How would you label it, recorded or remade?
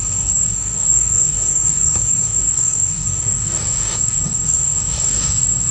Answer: remade